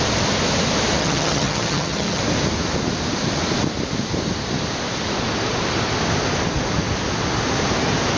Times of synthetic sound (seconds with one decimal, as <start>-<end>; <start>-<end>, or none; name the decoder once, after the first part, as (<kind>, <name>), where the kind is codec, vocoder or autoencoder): 1.0-2.2 (vocoder, HiFi-GAN)